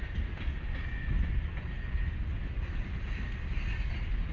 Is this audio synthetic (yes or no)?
no